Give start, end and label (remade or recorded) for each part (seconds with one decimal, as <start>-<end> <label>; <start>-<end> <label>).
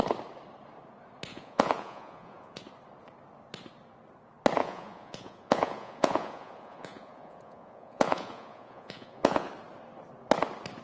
0.0-1.3 recorded; 1.3-2.6 remade; 2.6-4.6 recorded; 4.6-9.5 remade; 9.5-10.8 recorded